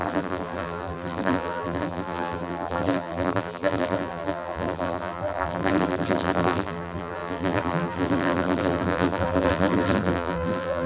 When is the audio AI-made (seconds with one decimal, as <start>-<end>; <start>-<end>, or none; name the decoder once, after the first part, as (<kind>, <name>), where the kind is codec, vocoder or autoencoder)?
0.0-10.9 (vocoder, BigVGAN v2)